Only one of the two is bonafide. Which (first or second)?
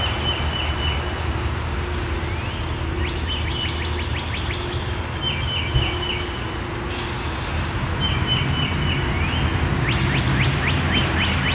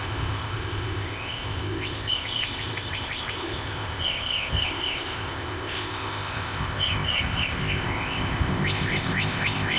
first